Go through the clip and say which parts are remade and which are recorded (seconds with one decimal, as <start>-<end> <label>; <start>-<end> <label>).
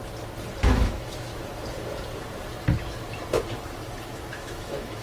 0.0-0.6 recorded; 0.6-1.3 remade; 1.3-4.3 recorded; 4.3-5.0 remade